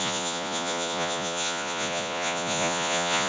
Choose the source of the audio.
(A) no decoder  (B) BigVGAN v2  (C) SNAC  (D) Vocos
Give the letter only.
D